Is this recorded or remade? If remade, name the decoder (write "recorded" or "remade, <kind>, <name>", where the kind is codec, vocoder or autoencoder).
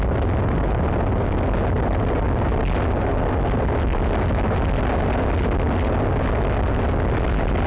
recorded